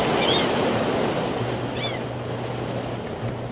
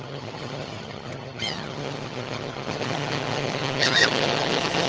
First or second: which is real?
first